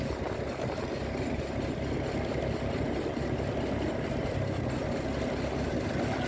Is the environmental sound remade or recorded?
recorded